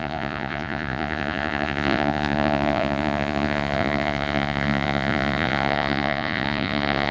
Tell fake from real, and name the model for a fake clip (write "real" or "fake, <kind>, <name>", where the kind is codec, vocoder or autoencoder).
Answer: fake, vocoder, Vocos